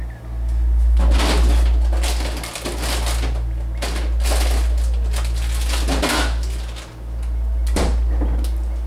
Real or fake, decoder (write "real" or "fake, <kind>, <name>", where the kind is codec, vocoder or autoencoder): real